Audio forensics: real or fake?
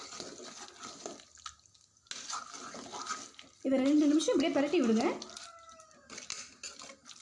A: real